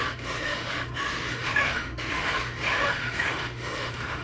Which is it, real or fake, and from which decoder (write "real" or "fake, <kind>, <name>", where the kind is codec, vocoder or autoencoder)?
fake, autoencoder, DAC-VAE